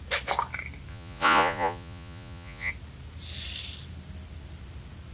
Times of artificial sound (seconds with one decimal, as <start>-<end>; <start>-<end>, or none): 0.9-2.7

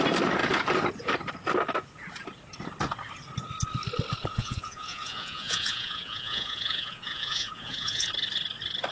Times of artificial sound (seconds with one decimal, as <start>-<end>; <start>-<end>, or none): 4.3-8.1

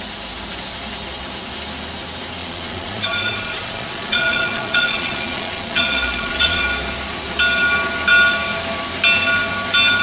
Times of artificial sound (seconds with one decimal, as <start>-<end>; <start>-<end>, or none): 2.4-6.6

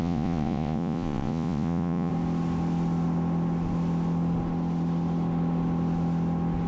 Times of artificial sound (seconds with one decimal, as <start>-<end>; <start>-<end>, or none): 0.0-2.1

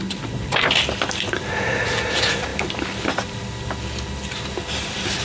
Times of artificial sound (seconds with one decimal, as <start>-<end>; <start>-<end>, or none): none

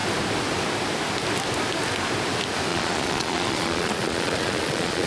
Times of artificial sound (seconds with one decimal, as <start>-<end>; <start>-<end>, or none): 2.7-5.1